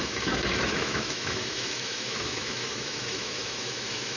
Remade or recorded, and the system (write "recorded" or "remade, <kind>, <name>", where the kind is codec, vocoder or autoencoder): remade, autoencoder, DAC-VAE